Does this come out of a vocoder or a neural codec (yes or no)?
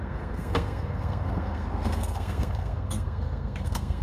yes